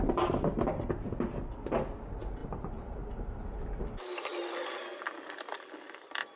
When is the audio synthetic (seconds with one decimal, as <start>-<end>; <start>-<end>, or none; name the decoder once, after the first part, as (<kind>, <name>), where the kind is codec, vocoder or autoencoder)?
2.4-3.8 (vocoder, BigVGAN v2)